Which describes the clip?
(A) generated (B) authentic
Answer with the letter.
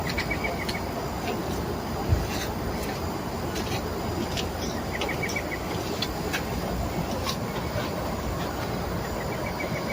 B